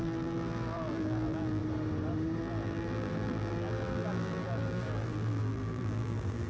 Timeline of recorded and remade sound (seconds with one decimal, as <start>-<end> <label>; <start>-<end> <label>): 0.0-1.6 remade; 1.6-2.4 recorded; 2.4-6.5 remade

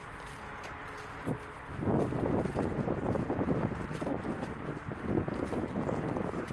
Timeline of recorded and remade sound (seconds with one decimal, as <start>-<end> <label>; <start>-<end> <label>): 0.0-6.5 recorded

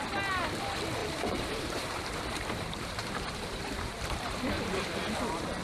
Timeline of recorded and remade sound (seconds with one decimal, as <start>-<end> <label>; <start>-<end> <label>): 0.0-1.0 recorded; 1.0-4.4 remade; 4.4-5.6 recorded

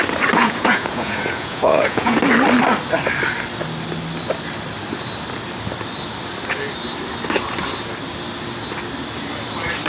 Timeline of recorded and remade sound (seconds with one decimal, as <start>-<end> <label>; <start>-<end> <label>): 0.0-0.4 recorded; 0.4-2.2 remade; 2.2-9.9 recorded

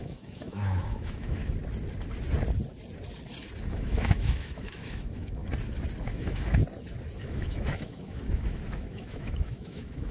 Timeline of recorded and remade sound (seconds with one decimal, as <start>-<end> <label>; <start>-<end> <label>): 0.0-1.4 remade; 1.4-3.6 recorded; 3.6-5.4 remade; 5.4-6.0 recorded; 6.0-6.6 remade; 6.6-7.2 recorded; 7.2-10.1 remade

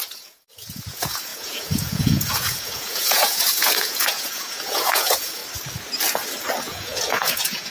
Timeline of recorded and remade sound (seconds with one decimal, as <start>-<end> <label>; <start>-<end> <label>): 0.0-5.4 remade; 5.4-6.6 recorded; 6.6-7.7 remade